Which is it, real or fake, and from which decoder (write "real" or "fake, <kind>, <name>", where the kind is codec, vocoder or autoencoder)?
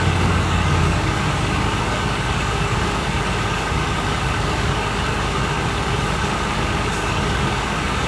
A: fake, codec, DAC